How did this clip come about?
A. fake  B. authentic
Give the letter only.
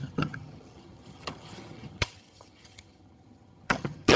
A